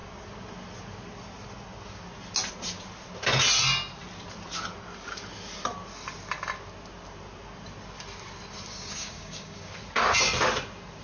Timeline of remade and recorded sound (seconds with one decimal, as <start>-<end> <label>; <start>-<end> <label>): 0.0-8.7 recorded; 8.7-9.7 remade; 9.7-11.0 recorded